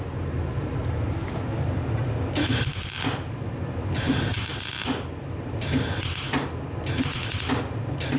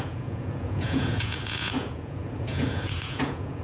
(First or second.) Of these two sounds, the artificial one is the second